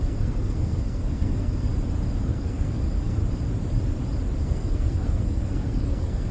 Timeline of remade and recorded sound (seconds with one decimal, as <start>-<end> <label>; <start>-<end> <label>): 0.0-1.7 remade; 1.7-2.2 recorded; 2.2-3.2 remade; 3.2-4.4 recorded; 4.4-6.3 remade